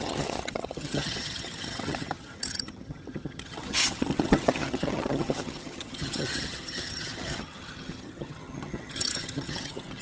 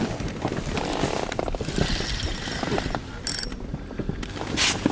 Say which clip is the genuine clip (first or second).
second